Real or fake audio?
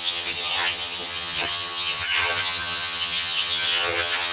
fake